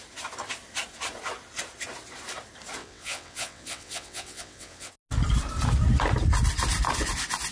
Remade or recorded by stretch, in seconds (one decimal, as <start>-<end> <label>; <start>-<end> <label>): 0.0-2.8 recorded; 2.8-4.9 remade; 4.9-7.5 recorded